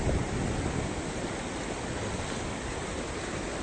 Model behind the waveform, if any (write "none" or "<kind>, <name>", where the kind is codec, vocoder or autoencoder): none